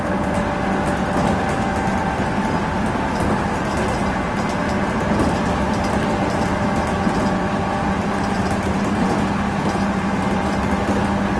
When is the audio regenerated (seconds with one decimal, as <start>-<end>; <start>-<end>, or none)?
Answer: none